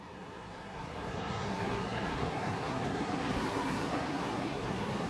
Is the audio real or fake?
fake